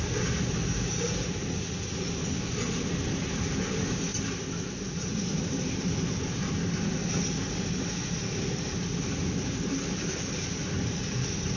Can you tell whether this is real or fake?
real